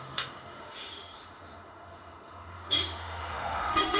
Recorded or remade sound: remade